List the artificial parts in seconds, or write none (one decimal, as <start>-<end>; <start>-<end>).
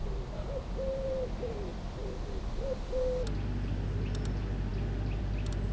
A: none